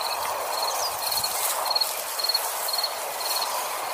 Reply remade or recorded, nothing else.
recorded